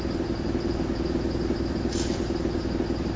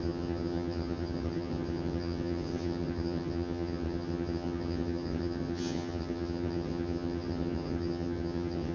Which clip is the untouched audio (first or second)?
first